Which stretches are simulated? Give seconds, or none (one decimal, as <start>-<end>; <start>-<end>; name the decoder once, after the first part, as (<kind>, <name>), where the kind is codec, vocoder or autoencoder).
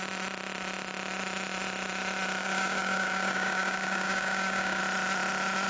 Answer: 2.4-4.8 (codec, DAC)